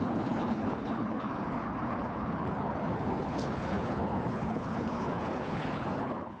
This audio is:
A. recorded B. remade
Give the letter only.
B